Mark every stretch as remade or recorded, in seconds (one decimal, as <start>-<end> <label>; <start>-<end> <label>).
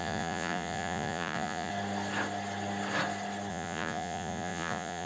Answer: 0.0-1.7 remade; 1.7-3.5 recorded; 3.5-5.1 remade